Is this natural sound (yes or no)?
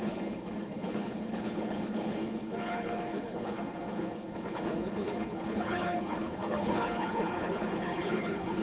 no